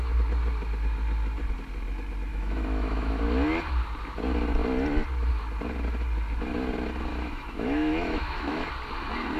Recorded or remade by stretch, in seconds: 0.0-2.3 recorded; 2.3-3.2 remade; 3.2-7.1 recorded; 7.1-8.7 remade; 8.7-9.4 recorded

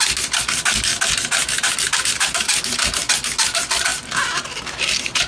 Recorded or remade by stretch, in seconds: 0.0-5.3 recorded

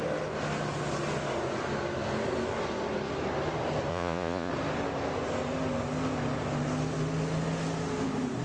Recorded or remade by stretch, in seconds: 0.0-3.9 recorded; 3.9-4.5 remade; 4.5-8.4 recorded

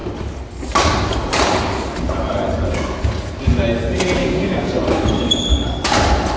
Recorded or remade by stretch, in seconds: 0.0-4.2 recorded; 4.2-4.7 remade; 4.7-6.4 recorded